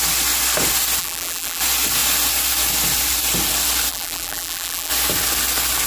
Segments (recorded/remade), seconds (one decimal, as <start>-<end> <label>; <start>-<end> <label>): 0.0-1.0 recorded; 1.0-1.6 remade; 1.6-3.9 recorded; 3.9-4.9 remade; 4.9-5.9 recorded